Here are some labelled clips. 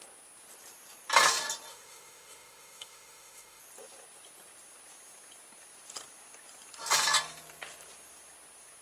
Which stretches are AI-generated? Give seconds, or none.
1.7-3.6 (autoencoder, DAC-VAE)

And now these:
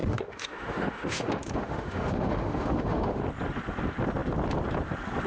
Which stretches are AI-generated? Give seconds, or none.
0.0-3.2 (autoencoder, DAC-VAE)

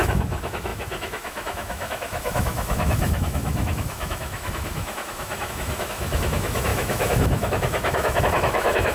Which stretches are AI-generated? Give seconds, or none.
0.0-8.9 (autoencoder, DAC-VAE)